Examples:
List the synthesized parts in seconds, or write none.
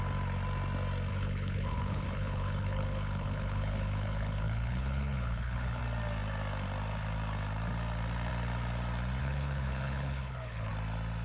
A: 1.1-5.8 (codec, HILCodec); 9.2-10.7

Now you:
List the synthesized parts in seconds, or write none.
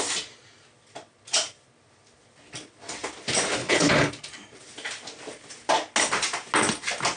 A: 3.6-4.1 (codec, HILCodec)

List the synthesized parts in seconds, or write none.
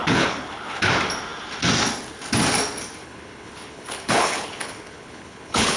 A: 0.0-0.9 (codec, HILCodec); 3.0-5.8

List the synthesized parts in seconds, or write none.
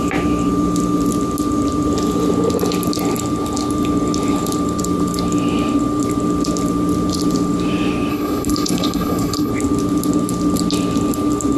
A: 8.1-9.5 (codec, HILCodec)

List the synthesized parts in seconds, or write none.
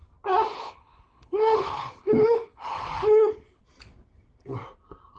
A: 0.5-3.6 (codec, HILCodec)